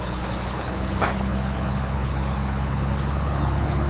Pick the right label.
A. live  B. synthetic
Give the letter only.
B